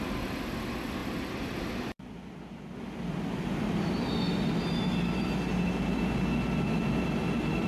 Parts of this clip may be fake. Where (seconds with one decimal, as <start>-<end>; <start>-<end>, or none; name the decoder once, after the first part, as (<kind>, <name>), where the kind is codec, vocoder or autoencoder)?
none